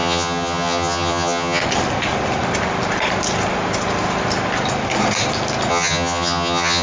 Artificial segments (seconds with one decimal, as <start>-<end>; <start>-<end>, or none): 0.0-1.6; 5.7-6.8